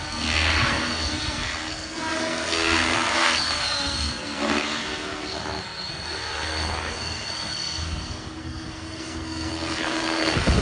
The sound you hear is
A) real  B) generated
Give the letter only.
B